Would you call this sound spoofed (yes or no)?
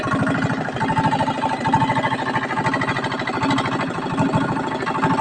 no